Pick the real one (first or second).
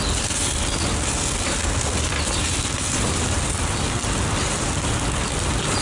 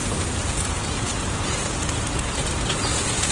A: first